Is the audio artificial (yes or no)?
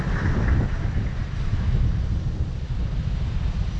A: no